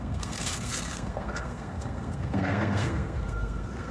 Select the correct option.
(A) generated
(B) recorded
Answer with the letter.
A